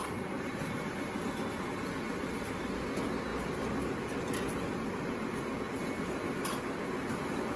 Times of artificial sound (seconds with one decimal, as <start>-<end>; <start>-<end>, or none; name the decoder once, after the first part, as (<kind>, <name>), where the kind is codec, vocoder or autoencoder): 0.0-0.6 (vocoder, BigVGAN v2)